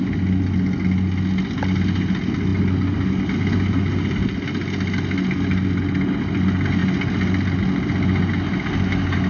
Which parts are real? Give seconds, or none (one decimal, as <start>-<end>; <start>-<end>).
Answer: 0.0-9.3